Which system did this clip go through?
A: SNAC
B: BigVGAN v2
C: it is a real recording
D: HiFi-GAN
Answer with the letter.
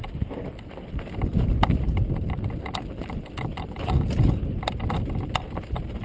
C